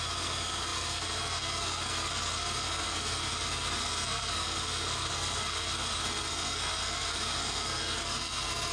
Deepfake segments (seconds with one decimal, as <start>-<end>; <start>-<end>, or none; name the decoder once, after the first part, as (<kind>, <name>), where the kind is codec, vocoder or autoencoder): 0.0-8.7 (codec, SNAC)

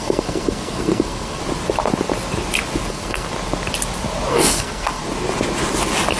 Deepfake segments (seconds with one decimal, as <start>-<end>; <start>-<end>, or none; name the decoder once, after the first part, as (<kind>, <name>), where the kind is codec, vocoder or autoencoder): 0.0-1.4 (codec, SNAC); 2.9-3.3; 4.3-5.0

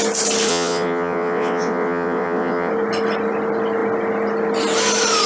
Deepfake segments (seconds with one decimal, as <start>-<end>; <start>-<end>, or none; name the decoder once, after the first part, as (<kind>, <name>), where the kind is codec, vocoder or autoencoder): 0.5-2.7 (vocoder, WaveNeXt)